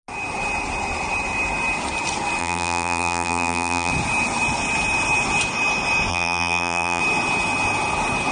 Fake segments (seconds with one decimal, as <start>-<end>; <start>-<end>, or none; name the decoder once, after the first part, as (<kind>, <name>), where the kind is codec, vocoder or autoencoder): 2.4-3.9 (vocoder, BigVGAN v2); 6.1-7.0